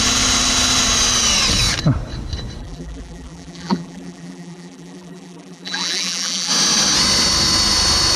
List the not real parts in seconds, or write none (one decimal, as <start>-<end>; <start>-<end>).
2.6-6.5